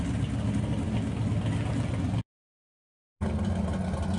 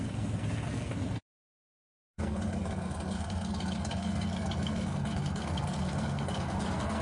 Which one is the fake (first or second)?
second